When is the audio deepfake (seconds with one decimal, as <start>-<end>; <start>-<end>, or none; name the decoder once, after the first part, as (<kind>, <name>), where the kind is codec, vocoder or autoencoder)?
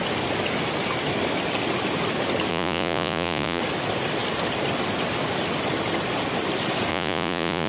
2.5-3.6 (vocoder, Vocos); 6.9-7.7